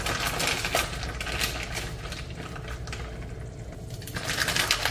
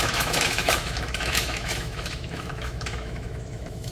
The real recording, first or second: first